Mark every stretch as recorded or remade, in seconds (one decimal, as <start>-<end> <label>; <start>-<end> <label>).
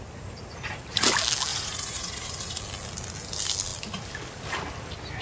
0.0-1.5 recorded; 1.5-2.6 remade; 2.6-5.2 recorded